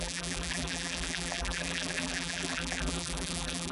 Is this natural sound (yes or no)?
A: no